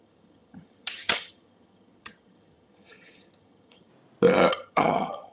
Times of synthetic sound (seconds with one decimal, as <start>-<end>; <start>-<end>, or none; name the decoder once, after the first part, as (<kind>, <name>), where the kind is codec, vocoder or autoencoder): 0.0-3.9 (vocoder, HiFi-GAN); 4.5-5.3